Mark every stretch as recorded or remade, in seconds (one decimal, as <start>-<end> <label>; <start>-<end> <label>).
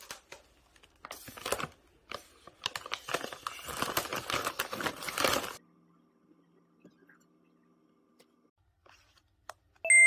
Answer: 0.0-10.1 recorded